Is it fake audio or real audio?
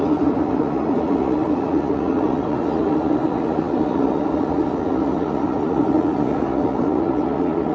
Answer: fake